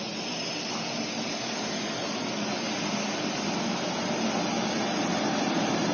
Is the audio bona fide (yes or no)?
yes